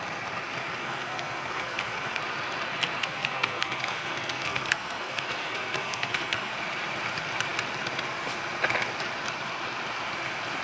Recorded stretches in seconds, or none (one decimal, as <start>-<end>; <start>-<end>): 0.0-0.8; 2.2-3.0; 6.5-10.6